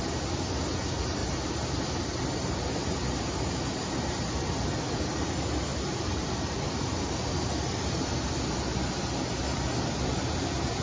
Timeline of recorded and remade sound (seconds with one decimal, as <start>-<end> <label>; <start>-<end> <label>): 0.0-5.7 recorded; 5.7-7.0 remade; 7.0-10.8 recorded